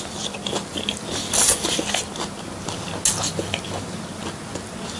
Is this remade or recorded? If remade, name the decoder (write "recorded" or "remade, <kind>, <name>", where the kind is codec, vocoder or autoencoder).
recorded